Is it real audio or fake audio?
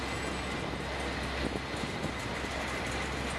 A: real